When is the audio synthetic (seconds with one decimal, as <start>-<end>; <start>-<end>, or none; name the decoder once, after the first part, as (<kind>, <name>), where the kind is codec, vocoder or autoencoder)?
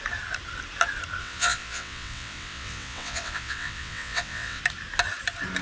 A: 1.2-4.6 (vocoder, WaveNeXt)